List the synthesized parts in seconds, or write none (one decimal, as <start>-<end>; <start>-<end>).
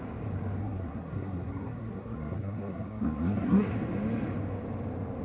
0.6-3.7